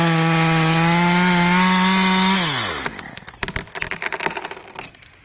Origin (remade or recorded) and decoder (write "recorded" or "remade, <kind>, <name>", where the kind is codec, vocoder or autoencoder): recorded